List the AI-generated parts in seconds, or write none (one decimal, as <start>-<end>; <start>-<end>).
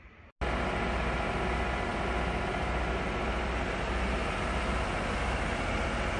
none